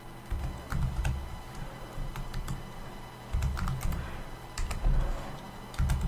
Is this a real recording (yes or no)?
yes